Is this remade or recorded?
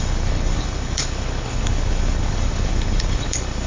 remade